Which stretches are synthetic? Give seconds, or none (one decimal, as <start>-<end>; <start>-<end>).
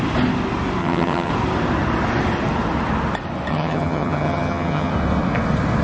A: 0.8-1.3; 3.5-4.9